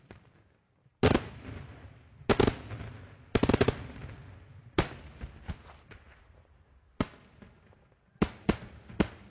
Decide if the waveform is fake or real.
real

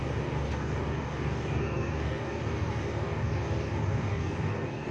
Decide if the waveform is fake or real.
fake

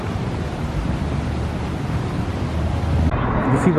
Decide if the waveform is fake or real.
real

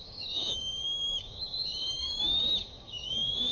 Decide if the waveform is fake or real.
fake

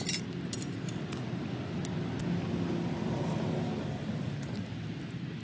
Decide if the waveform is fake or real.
real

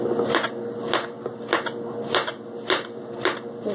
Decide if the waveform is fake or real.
real